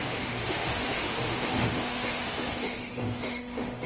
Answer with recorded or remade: remade